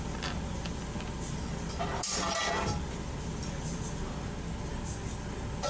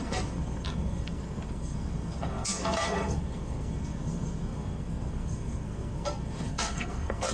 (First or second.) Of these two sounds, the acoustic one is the first